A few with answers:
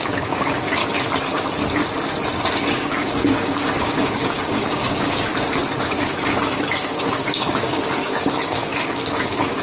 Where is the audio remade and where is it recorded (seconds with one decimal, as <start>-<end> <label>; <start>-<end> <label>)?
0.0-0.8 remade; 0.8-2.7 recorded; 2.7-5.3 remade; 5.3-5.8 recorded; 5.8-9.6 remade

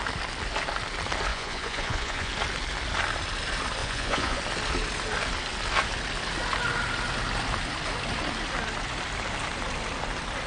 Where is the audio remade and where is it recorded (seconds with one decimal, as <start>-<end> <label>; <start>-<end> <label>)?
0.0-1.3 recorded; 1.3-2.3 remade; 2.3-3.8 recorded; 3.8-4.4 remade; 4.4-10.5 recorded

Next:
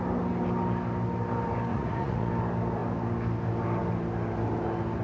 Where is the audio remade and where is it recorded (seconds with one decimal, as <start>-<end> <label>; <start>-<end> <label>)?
0.0-1.7 recorded; 1.7-2.3 remade; 2.3-5.0 recorded